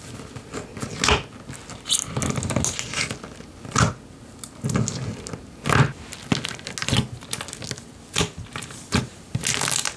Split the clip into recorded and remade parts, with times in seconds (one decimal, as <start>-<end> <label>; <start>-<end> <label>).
0.0-10.0 recorded

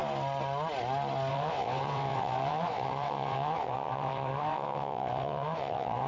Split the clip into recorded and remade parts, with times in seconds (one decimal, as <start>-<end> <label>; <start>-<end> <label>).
0.0-1.3 recorded; 1.3-6.1 remade

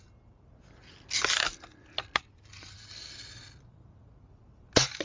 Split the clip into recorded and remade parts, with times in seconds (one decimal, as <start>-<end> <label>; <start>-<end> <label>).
0.0-5.0 recorded

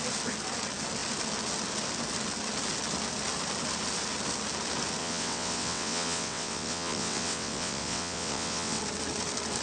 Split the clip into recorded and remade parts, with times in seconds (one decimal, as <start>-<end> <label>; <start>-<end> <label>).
0.0-5.0 recorded; 5.0-8.8 remade; 8.8-9.6 recorded

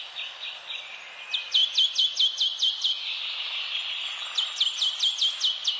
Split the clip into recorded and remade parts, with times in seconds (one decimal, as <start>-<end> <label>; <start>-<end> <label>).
0.0-5.8 recorded